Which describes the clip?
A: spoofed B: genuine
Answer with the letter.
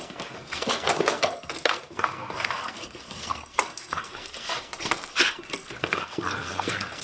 A